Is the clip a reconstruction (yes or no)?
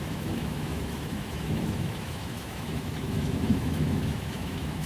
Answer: yes